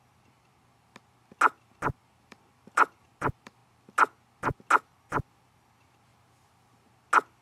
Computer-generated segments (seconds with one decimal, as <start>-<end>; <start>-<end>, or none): 0.0-0.9; 1.6-3.6; 4.8-6.1